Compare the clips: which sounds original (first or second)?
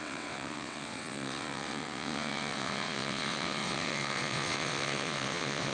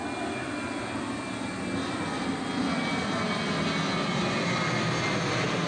second